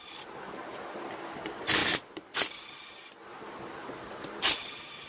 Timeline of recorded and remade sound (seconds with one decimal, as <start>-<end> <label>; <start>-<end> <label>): 0.0-5.1 recorded